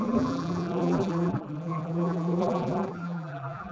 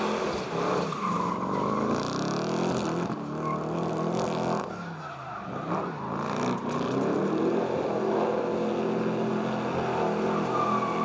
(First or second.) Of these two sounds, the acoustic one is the second